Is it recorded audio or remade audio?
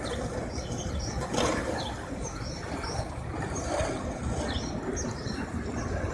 recorded